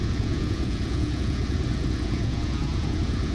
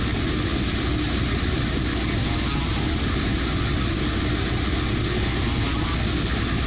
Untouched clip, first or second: second